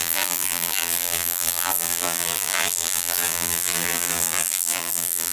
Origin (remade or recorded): remade